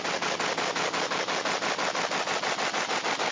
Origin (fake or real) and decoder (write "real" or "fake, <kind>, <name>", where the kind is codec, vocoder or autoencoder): real